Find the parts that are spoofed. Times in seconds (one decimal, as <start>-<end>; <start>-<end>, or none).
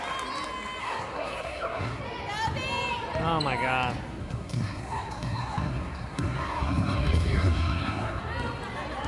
0.8-2.0; 4.2-8.2